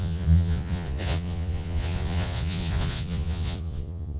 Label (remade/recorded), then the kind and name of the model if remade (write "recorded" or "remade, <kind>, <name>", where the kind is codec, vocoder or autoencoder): remade, vocoder, Vocos